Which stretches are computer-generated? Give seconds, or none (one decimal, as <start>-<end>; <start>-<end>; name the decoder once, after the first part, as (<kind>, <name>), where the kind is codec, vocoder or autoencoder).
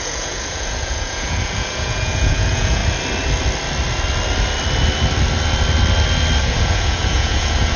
0.0-2.8 (vocoder, Vocos); 6.4-7.8